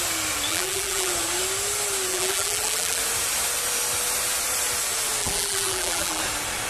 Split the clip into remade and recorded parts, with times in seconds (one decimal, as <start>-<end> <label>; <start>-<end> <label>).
0.0-0.5 recorded; 0.5-1.1 remade; 1.1-2.1 recorded; 2.1-3.0 remade; 3.0-5.2 recorded; 5.2-6.2 remade; 6.2-6.7 recorded